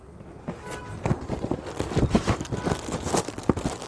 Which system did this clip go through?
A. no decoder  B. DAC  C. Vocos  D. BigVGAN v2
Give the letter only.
A